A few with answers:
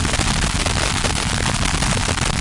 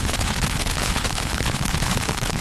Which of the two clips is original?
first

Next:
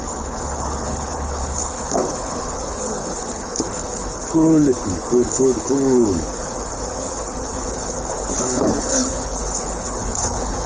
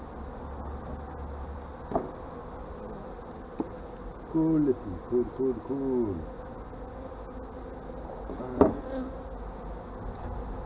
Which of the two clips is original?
second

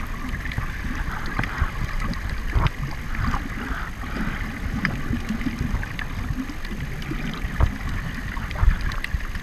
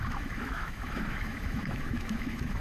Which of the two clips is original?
first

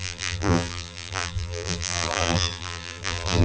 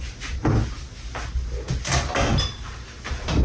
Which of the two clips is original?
second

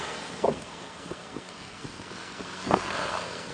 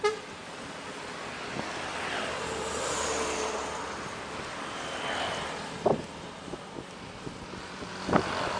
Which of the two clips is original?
second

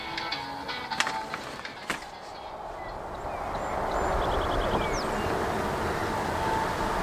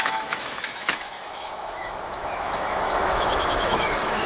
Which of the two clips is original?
first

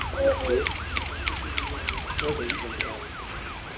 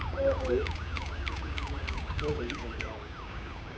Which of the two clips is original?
first